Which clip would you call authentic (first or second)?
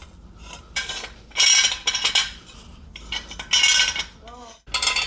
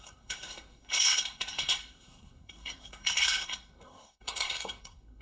first